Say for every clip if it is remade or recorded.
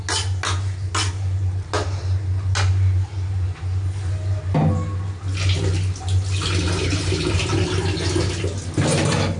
recorded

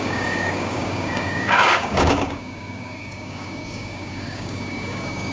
remade